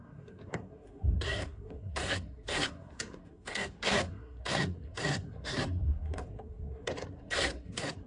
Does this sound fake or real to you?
fake